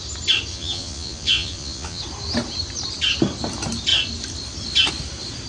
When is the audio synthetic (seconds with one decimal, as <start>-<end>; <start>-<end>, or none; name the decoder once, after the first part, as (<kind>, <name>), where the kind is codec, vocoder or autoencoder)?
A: 0.5-2.0 (vocoder, Vocos)